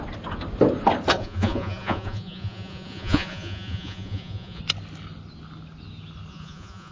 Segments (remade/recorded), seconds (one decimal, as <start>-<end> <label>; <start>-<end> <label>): 0.0-1.1 recorded; 1.1-4.6 remade; 4.6-6.3 recorded; 6.3-6.9 remade